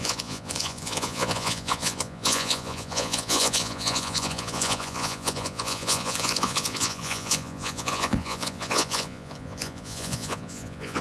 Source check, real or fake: fake